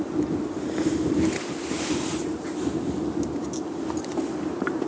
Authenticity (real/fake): real